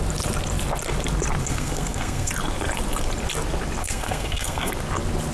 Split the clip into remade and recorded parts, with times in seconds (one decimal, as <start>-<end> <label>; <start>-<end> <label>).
0.0-1.4 recorded; 1.4-2.3 remade; 2.3-3.8 recorded; 3.8-4.7 remade; 4.7-5.3 recorded